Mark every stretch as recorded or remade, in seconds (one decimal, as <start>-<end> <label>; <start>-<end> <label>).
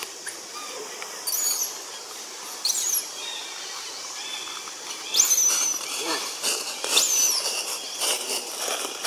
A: 0.0-8.1 recorded; 8.1-9.1 remade